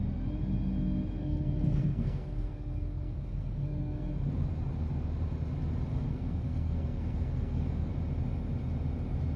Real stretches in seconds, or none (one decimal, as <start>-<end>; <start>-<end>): 0.0-1.2; 4.1-5.9; 7.9-9.4